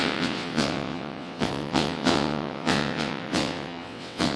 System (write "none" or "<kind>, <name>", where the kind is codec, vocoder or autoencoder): vocoder, WaveNeXt